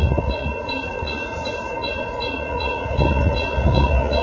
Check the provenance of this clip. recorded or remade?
remade